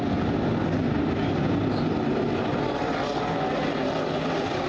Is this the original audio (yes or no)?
yes